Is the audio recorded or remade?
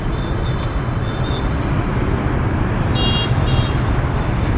recorded